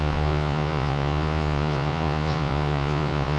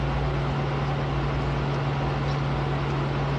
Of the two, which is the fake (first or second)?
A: first